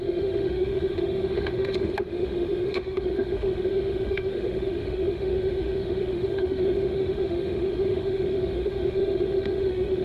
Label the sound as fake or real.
fake